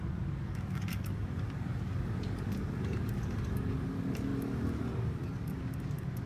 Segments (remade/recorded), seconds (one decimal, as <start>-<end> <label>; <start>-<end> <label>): 0.0-6.3 remade